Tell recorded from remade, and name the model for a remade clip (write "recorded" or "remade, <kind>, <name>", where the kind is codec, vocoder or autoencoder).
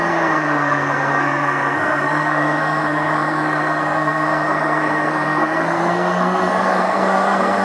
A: remade, codec, SNAC